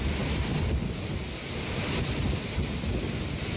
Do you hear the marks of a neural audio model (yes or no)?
no